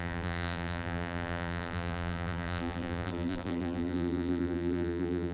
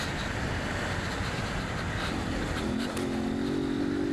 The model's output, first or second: first